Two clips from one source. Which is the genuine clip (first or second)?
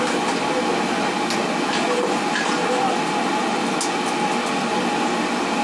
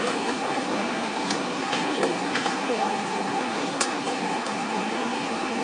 first